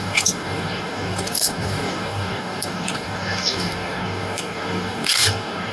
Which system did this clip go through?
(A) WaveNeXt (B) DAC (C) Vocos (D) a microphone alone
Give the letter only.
B